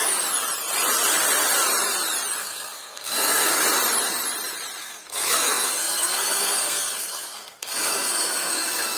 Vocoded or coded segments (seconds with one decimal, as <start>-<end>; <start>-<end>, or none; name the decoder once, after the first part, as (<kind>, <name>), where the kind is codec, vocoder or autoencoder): 2.4-3.6 (codec, SNAC); 4.8-9.0